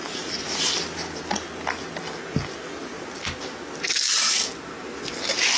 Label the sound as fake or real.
real